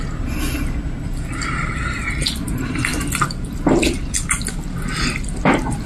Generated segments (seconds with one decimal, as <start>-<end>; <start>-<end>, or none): none